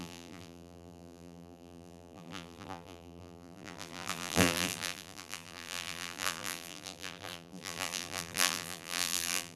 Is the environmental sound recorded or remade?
remade